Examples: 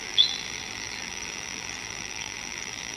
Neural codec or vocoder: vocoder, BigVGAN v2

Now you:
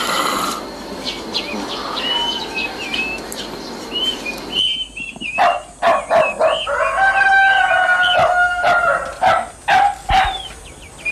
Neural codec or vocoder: none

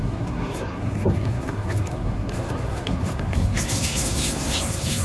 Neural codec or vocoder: codec, SNAC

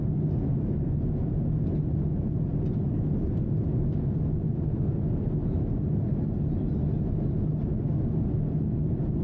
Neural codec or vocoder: none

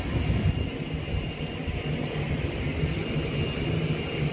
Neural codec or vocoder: none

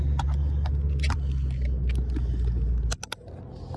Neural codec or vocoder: none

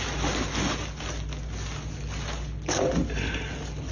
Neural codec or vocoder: none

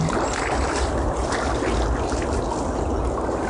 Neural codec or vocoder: none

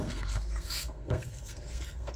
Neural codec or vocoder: codec, SNAC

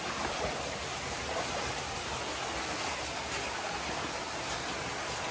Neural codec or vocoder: none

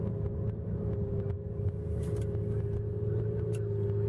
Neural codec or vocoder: none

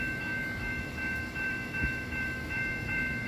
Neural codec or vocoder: autoencoder, DAC-VAE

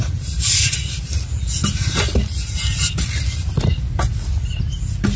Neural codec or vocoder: none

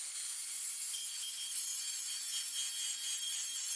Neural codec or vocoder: none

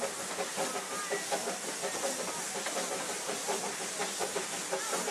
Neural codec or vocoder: none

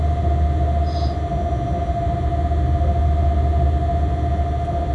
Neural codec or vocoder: none